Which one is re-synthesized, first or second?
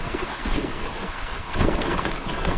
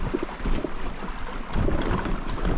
first